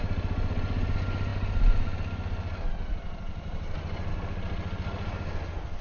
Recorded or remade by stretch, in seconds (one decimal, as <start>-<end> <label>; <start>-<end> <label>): 0.0-5.8 recorded